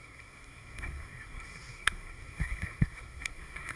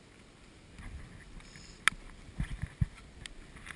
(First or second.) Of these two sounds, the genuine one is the second